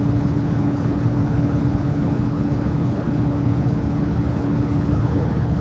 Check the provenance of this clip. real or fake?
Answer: fake